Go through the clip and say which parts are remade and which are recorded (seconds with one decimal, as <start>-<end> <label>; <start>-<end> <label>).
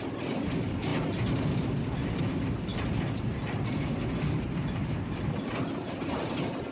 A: 0.0-6.7 recorded